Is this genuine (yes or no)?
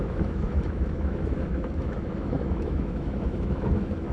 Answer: no